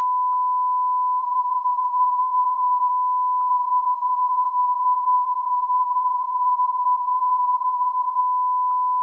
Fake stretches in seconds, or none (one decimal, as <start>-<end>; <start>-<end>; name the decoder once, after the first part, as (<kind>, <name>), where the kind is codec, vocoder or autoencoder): 1.2-2.9 (vocoder, Vocos); 3.5-8.2